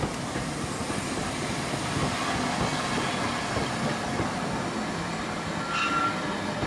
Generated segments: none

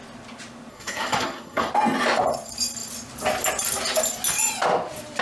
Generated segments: 0.7-1.7